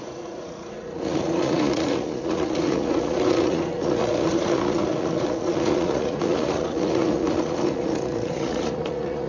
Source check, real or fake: fake